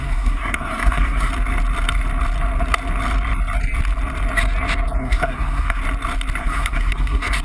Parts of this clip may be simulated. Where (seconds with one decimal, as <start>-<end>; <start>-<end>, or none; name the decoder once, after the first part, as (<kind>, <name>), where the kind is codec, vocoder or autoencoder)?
0.0-1.3 (codec, SNAC); 5.0-5.8; 6.4-7.4